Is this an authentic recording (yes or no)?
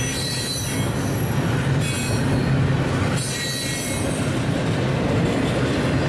yes